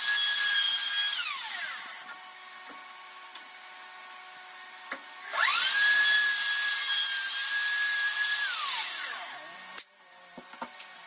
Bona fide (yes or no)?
yes